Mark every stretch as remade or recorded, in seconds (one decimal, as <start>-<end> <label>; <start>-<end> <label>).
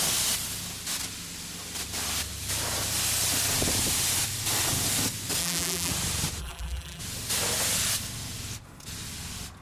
0.0-5.4 recorded; 5.4-5.9 remade; 5.9-6.4 recorded; 6.4-7.0 remade; 7.0-9.6 recorded